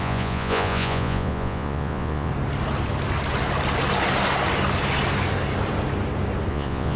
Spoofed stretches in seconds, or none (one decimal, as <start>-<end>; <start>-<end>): 0.0-2.3; 6.5-7.0